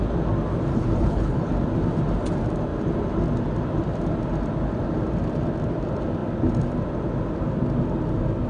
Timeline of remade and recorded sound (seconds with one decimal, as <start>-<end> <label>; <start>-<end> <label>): 0.0-0.7 recorded; 0.7-1.5 remade; 1.5-8.5 recorded